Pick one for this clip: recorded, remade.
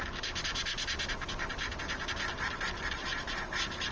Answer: recorded